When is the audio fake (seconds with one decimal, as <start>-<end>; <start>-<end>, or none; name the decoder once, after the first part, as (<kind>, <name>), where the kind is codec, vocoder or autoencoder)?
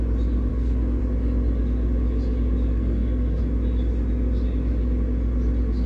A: 0.5-1.0 (codec, SNAC); 2.7-3.4